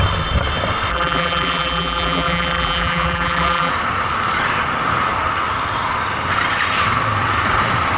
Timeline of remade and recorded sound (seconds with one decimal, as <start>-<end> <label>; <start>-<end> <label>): 0.0-0.9 recorded; 0.9-3.7 remade; 3.7-8.0 recorded

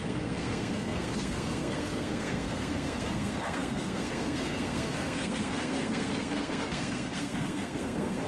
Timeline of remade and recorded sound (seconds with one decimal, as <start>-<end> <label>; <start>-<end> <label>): 0.0-8.3 remade

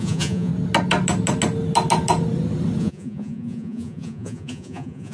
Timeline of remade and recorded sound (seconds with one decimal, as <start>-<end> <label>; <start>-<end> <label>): 0.0-0.5 remade; 0.5-2.8 recorded; 2.8-5.1 remade